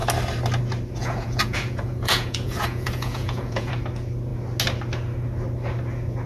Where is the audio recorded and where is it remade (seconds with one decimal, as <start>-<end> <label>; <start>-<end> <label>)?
0.0-1.0 recorded; 1.0-3.7 remade; 3.7-6.3 recorded